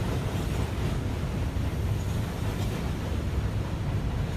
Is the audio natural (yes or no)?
yes